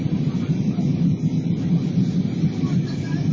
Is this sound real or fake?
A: real